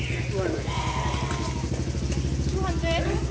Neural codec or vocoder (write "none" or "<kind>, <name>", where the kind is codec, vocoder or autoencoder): none